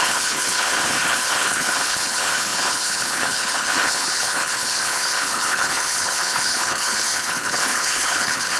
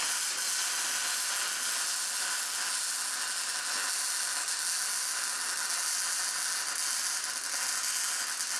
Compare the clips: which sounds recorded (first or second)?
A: second